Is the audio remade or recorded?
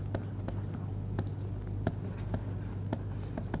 recorded